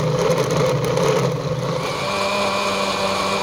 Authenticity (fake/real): real